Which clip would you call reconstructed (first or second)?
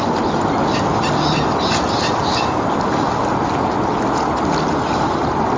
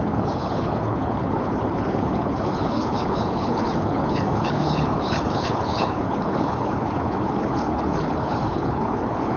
second